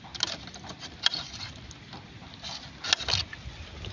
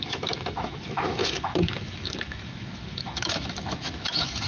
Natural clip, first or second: first